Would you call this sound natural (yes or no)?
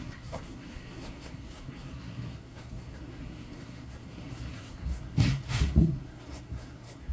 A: no